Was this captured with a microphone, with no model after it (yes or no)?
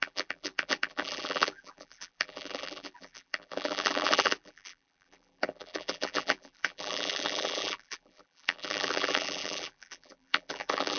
no